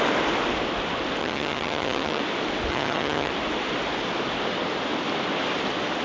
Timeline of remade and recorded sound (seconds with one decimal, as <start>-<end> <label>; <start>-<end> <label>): 0.0-1.2 recorded; 1.2-2.2 remade; 2.2-2.7 recorded; 2.7-3.3 remade; 3.3-6.0 recorded